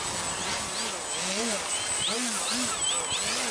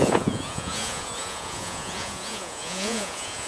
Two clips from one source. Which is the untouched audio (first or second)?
first